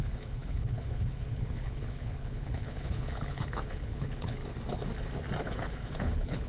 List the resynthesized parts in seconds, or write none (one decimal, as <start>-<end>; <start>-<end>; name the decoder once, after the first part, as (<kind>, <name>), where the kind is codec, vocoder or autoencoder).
0.0-4.4 (codec, HILCodec); 5.4-6.5